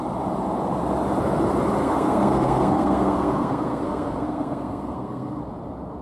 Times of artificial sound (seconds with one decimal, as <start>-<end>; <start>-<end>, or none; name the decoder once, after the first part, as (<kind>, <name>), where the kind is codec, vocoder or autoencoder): 1.8-5.4 (codec, SNAC)